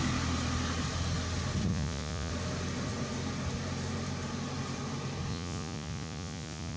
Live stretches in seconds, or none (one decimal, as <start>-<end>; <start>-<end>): 0.0-1.7; 2.3-5.3